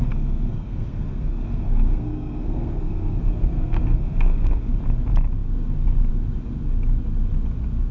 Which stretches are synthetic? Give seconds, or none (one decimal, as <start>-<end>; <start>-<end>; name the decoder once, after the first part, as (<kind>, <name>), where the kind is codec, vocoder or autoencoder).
0.0-4.7 (codec, SNAC)